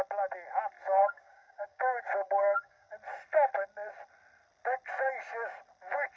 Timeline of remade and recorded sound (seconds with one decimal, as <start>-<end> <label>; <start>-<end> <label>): 0.0-1.0 recorded; 1.0-2.9 remade; 2.9-6.2 recorded